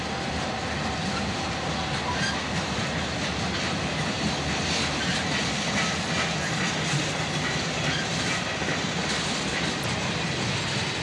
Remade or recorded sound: recorded